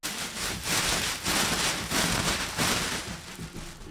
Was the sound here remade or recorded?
recorded